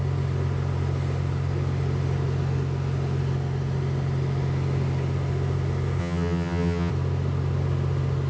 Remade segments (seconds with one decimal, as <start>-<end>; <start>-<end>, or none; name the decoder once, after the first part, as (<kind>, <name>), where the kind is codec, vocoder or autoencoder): 6.0-6.9 (vocoder, HiFi-GAN)